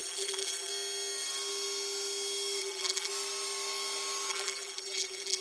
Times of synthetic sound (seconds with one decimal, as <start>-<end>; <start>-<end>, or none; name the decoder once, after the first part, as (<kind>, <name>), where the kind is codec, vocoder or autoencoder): 0.0-0.7 (vocoder, BigVGAN v2); 2.6-3.1; 4.3-5.4

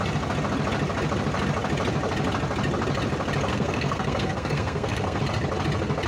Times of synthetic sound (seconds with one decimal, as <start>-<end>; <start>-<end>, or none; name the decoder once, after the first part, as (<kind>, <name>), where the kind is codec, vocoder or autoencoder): 3.5-5.2 (codec, SNAC)

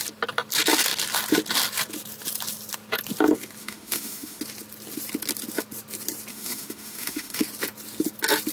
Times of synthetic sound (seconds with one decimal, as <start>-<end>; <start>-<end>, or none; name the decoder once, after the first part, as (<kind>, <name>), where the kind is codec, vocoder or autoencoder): 3.6-4.4 (autoencoder, DAC-VAE); 6.3-7.4

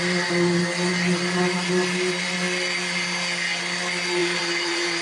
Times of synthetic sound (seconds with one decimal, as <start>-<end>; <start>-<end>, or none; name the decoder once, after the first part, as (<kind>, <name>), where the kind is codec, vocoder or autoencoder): 4.2-5.0 (vocoder, BigVGAN v2)

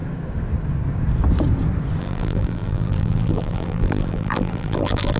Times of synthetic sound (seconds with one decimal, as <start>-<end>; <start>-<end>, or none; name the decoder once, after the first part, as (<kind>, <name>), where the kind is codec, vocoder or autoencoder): 2.0-5.2 (vocoder, BigVGAN v2)

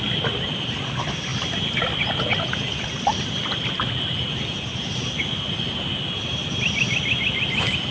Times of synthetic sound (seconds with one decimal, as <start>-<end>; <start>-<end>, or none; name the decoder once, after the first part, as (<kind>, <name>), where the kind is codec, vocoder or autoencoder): none